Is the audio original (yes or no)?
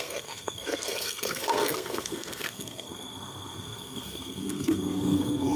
no